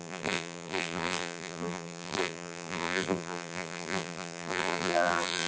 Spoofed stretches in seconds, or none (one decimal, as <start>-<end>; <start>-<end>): 0.0-5.5